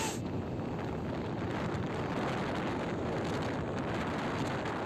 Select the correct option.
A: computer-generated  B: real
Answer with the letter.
B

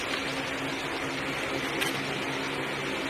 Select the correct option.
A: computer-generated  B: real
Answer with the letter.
B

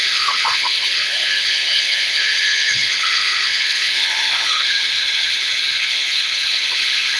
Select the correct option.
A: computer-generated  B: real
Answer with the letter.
A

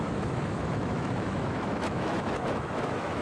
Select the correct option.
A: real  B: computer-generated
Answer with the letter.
B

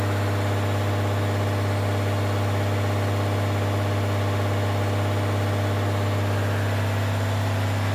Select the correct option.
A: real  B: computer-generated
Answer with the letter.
A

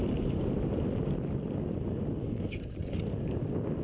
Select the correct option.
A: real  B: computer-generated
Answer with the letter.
B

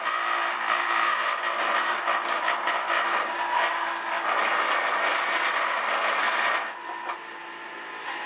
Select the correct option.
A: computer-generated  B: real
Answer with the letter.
B